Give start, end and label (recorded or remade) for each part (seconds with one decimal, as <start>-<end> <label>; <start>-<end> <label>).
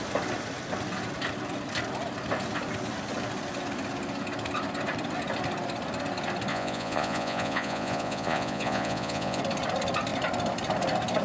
0.0-6.5 recorded; 6.5-9.4 remade; 9.4-11.2 recorded